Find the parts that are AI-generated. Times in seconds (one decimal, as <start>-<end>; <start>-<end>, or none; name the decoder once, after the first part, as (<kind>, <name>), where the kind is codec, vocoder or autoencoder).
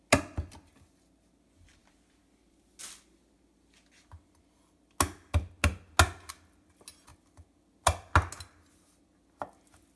none